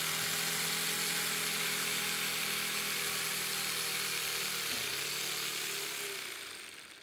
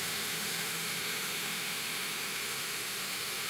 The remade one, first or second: second